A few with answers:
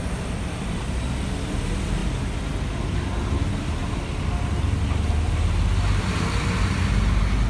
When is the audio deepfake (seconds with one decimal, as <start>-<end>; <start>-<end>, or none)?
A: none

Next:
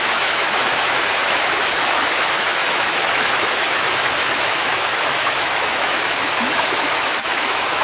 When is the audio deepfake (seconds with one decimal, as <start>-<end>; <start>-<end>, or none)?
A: 0.0-7.8

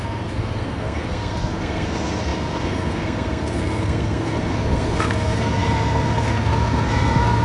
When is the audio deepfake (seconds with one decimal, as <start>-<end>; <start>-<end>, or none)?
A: 0.0-7.4

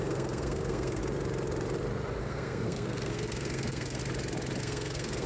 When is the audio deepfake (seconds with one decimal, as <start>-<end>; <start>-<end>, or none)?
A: 0.0-1.0; 2.2-4.0; 4.6-5.3